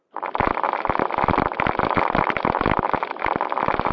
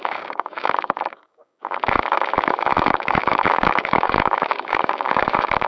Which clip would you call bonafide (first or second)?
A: first